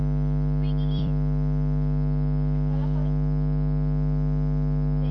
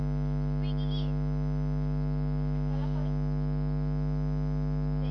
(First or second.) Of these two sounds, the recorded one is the second